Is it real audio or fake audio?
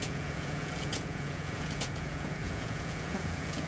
fake